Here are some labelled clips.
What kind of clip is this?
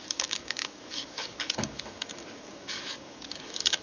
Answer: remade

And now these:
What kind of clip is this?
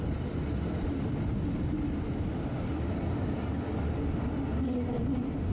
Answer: recorded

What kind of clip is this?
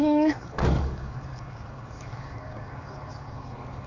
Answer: remade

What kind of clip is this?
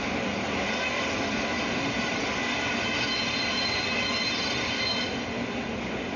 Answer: recorded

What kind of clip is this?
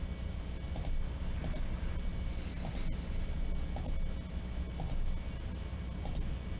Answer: recorded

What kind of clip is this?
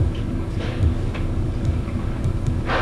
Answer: remade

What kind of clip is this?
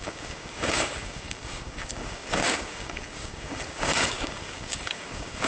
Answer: remade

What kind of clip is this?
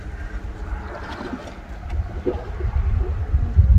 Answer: recorded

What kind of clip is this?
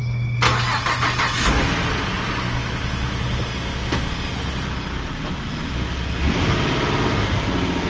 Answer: recorded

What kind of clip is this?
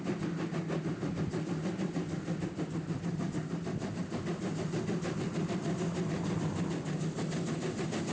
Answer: recorded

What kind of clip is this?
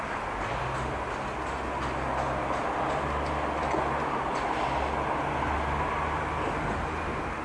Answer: recorded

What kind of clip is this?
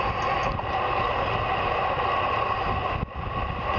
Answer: recorded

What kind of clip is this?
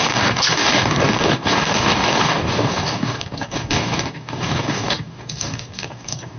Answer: remade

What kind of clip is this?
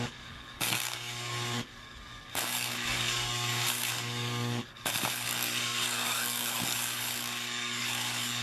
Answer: remade